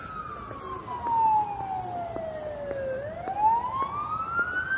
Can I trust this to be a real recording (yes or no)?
yes